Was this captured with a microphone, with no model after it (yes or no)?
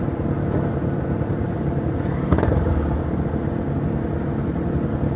yes